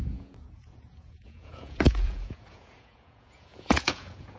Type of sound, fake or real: fake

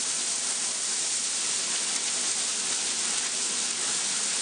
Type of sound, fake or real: real